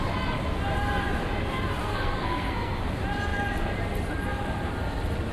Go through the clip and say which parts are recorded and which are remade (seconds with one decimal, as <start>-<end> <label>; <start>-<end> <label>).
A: 0.0-1.8 recorded; 1.8-2.8 remade; 2.8-5.3 recorded